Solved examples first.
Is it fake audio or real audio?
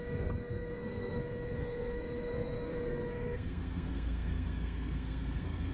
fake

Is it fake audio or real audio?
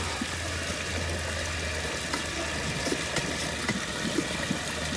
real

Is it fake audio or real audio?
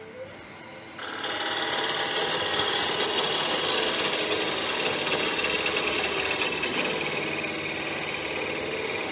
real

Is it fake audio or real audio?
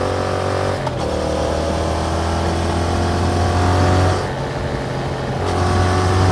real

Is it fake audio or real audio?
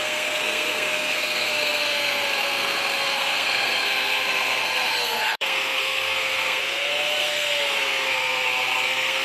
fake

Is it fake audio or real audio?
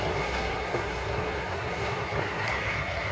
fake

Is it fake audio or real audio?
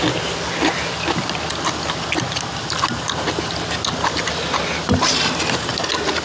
real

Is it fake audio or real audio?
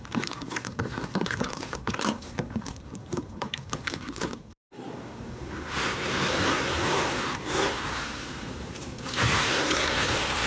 fake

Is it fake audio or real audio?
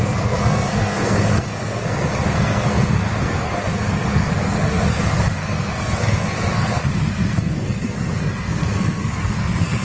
fake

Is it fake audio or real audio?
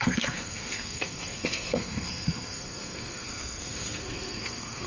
fake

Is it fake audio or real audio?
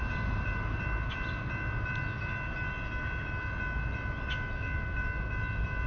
real